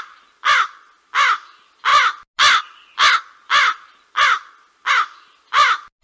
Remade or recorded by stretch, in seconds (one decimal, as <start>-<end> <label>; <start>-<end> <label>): 0.0-6.0 recorded